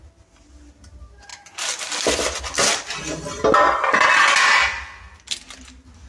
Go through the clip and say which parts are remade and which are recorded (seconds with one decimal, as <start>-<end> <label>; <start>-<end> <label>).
0.0-6.1 recorded